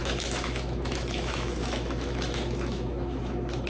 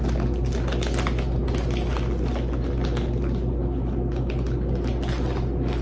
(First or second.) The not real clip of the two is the first